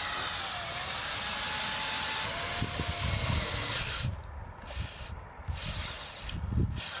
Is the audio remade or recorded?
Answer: recorded